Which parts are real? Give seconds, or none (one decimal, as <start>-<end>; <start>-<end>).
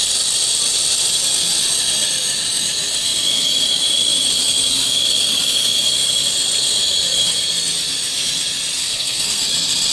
0.0-8.8; 9.4-9.9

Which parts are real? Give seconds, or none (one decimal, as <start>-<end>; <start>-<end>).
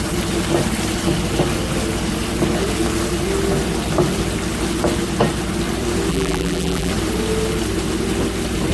0.0-6.1; 6.9-8.7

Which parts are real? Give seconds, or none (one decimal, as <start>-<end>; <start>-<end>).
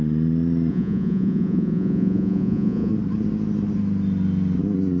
0.0-0.7; 2.9-5.0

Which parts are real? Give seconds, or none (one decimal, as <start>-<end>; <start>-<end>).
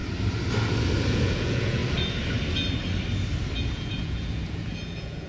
0.0-1.1; 1.8-3.6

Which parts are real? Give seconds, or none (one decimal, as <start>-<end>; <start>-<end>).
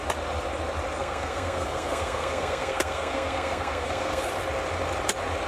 0.0-1.0; 4.3-5.5